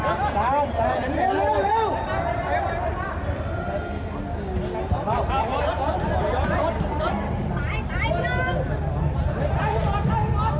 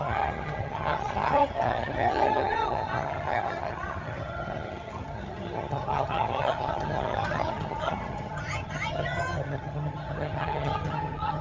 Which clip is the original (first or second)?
first